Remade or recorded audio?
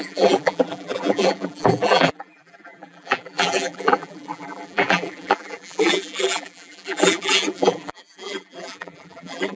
remade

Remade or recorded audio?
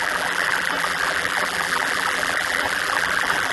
remade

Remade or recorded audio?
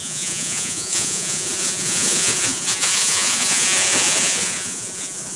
remade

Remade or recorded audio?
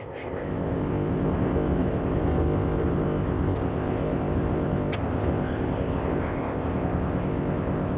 remade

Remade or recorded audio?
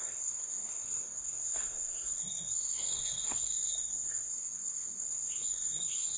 remade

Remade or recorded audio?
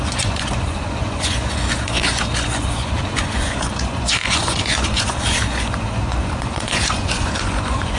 remade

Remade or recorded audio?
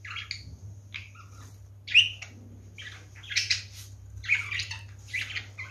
recorded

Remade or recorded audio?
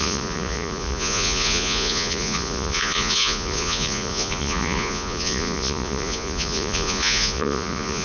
remade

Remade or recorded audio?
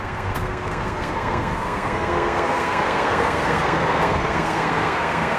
remade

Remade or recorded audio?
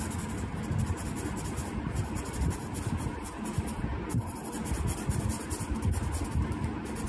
recorded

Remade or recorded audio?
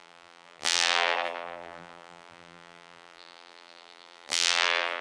remade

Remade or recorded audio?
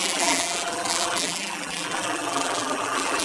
remade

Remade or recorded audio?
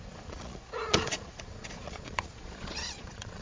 remade